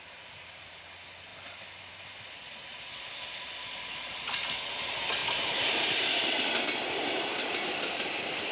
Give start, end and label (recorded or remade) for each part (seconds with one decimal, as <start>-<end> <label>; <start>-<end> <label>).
0.0-5.2 recorded; 5.2-6.6 remade; 6.6-8.5 recorded